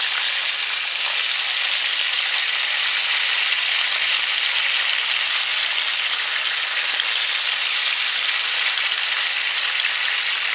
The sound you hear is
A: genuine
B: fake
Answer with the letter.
A